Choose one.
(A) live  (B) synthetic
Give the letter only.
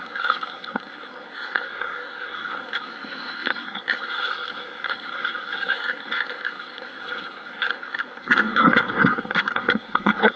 B